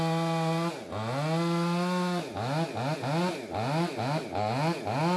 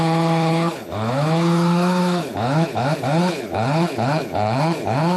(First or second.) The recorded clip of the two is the first